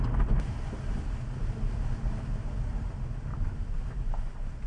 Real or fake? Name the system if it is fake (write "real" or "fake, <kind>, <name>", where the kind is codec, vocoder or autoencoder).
real